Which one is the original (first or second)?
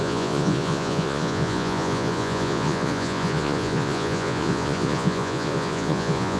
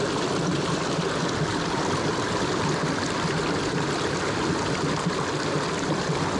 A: second